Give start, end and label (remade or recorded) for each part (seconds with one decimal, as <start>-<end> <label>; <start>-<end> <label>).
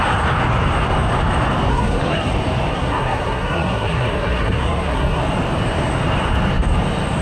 0.0-1.7 recorded; 1.7-2.3 remade; 2.3-2.7 recorded; 2.7-5.2 remade; 5.2-7.2 recorded